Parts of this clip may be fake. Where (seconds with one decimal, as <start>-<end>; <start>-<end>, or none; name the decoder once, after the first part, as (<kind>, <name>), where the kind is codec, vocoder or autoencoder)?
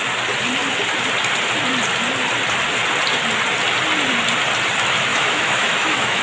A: 5.1-6.2 (autoencoder, DAC-VAE)